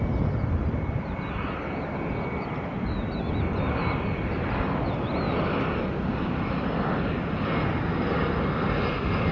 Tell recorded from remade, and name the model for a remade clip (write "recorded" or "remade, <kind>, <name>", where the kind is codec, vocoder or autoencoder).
recorded